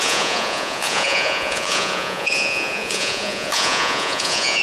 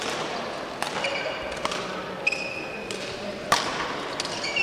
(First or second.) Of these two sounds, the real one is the second